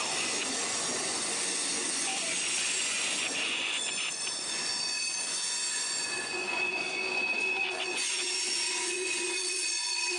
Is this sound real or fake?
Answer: fake